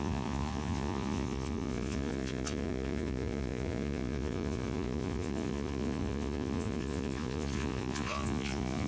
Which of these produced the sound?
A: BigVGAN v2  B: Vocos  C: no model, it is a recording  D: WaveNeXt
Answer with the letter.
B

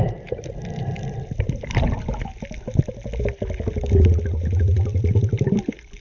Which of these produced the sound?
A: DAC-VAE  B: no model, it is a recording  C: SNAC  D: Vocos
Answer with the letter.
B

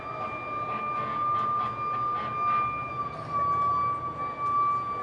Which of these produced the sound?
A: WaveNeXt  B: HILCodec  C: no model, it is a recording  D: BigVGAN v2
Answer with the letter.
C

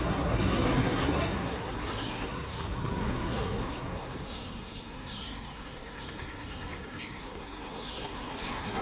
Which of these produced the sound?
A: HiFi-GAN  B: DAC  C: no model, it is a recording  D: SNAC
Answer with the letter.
D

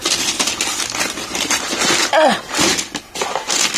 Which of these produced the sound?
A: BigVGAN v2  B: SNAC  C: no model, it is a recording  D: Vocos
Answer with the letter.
C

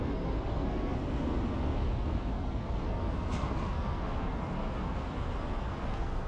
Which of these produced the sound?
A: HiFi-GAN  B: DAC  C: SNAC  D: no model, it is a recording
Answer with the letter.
C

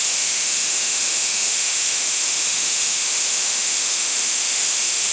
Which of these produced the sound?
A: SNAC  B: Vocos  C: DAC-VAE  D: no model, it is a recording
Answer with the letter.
C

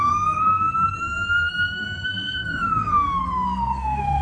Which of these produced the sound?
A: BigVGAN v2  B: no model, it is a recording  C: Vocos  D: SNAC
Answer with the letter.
D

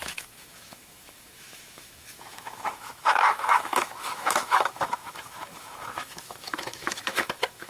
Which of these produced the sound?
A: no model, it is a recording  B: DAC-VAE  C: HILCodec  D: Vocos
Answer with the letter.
B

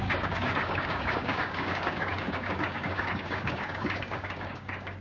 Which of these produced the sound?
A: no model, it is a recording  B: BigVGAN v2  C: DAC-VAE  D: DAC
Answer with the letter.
D